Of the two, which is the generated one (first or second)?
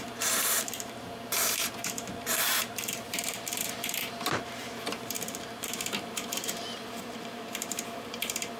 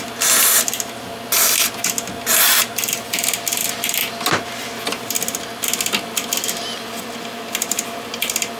first